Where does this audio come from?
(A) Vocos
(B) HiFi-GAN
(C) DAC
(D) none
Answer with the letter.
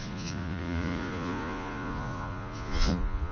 A